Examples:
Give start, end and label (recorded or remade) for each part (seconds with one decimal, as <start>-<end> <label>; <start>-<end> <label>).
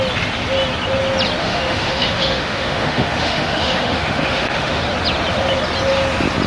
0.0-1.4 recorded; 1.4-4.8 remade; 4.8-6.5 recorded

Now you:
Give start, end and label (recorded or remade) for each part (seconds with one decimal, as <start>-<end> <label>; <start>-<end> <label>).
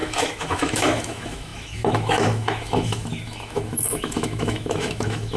0.0-5.4 remade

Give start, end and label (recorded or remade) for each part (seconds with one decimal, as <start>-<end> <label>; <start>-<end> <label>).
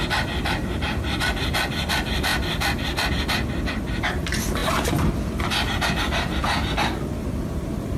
0.0-8.0 recorded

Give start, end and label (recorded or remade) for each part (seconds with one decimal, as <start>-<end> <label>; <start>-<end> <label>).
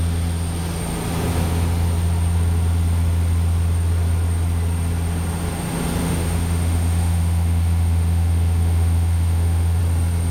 0.0-6.0 recorded; 6.0-9.8 remade; 9.8-10.3 recorded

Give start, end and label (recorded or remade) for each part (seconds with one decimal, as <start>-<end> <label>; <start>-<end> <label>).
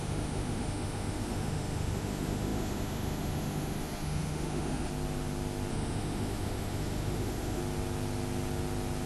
0.0-4.9 remade; 4.9-5.7 recorded; 5.7-7.6 remade; 7.6-9.1 recorded